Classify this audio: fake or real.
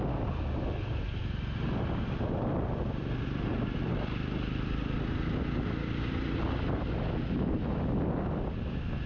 real